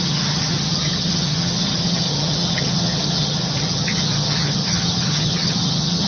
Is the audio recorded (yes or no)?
no